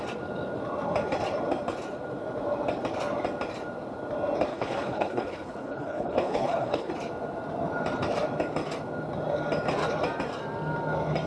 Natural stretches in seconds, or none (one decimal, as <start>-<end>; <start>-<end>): 0.0-4.5; 6.9-11.3